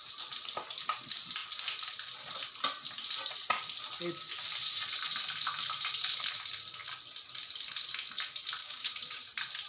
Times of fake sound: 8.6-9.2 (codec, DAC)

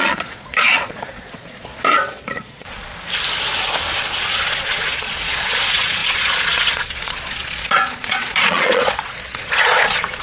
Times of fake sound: 0.0-2.9 (vocoder, Vocos); 4.0-10.2

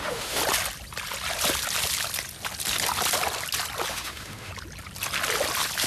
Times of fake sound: 0.0-0.4 (autoencoder, DAC-VAE); 3.9-4.5

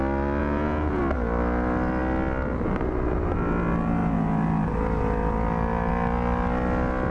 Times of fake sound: 0.4-1.0 (vocoder, Vocos)

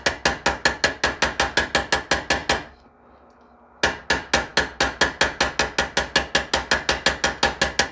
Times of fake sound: none

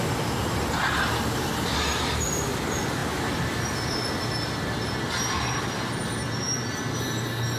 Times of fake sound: none

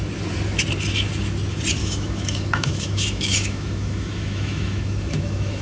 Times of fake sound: 1.8-5.6 (autoencoder, DAC-VAE)